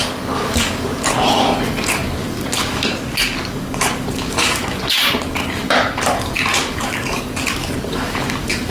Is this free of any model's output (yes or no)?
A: no